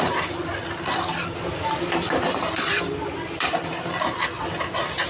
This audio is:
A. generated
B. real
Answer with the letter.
A